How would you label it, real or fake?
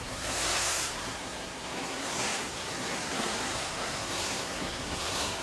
fake